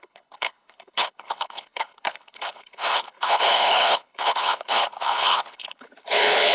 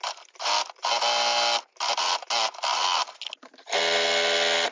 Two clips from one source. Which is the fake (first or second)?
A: first